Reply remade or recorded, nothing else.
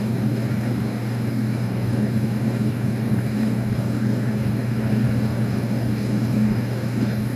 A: remade